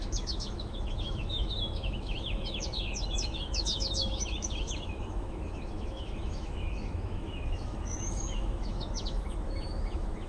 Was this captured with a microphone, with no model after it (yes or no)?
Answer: no